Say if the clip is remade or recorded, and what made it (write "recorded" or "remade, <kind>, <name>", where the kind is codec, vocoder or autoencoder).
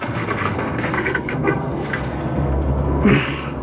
remade, codec, SNAC